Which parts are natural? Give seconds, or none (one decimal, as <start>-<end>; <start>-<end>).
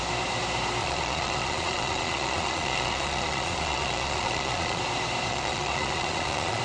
0.0-0.8; 4.8-5.3